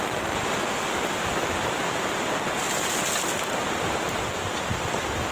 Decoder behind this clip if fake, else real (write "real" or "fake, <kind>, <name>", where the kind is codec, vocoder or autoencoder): real